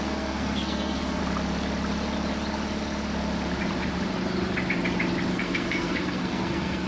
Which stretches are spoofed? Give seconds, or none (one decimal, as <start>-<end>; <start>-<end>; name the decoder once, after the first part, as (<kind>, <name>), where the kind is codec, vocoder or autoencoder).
0.0-1.2 (codec, SNAC); 5.3-6.9